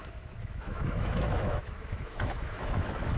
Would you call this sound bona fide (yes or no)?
no